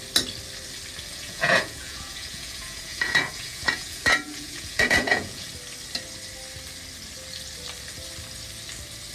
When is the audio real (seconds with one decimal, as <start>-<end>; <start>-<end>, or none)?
0.0-1.1; 5.5-9.1